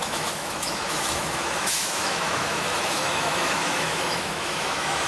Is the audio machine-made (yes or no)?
yes